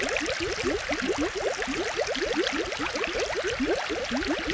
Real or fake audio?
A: real